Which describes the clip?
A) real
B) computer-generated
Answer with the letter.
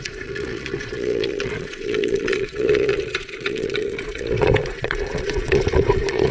B